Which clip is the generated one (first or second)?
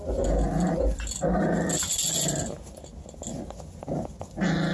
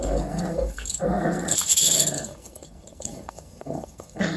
second